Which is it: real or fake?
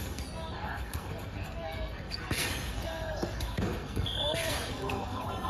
fake